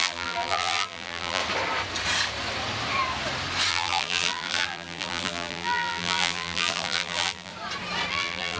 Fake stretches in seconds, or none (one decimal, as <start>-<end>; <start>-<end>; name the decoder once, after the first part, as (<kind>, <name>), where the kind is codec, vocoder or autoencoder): 0.0-1.4 (vocoder, BigVGAN v2); 3.7-7.5; 8.1-8.6